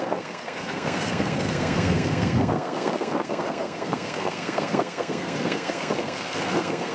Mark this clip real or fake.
fake